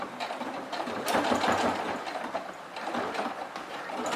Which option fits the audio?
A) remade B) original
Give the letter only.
B